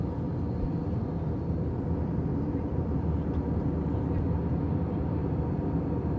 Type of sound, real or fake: real